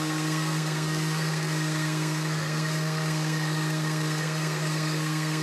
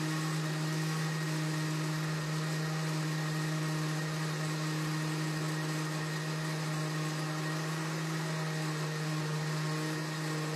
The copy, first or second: first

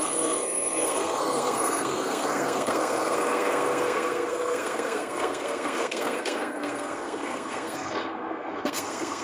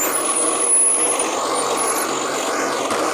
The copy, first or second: first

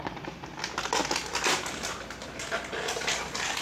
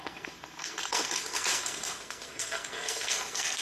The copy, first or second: second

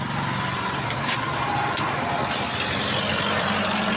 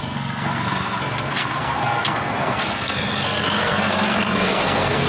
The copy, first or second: second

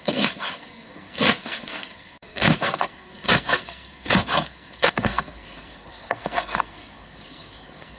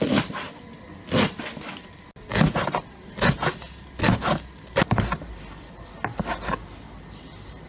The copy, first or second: first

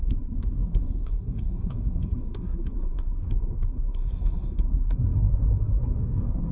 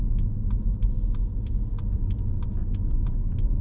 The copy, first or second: first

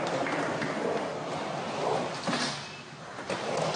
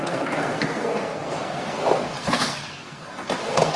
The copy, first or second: second